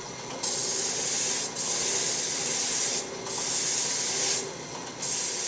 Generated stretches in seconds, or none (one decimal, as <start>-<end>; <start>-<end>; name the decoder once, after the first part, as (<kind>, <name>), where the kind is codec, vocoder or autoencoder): none